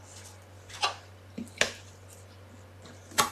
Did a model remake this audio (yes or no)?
no